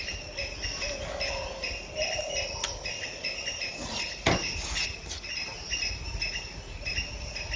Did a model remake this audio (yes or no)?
no